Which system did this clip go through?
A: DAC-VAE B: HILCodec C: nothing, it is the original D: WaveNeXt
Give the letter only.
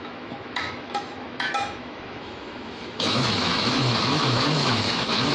A